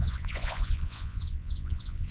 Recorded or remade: remade